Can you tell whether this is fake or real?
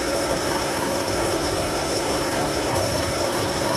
fake